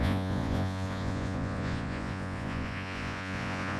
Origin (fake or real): fake